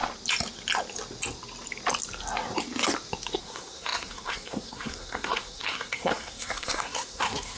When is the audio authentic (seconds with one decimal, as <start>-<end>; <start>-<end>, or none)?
0.0-3.4